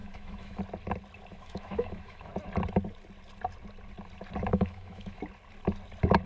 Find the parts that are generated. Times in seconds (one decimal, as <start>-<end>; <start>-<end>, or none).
0.0-0.6; 1.3-2.3; 4.5-5.2